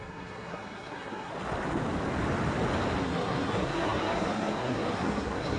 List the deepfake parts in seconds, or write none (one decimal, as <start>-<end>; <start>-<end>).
0.0-1.3; 3.0-5.6